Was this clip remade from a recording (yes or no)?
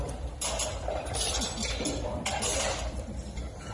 yes